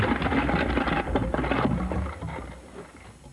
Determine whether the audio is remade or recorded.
recorded